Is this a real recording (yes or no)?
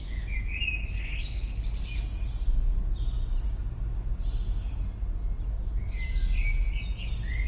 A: yes